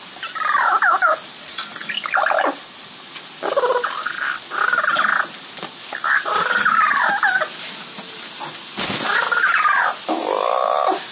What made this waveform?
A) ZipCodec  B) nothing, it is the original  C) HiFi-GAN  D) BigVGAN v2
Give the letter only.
B